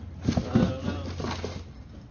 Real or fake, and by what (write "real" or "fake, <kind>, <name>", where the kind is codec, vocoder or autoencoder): real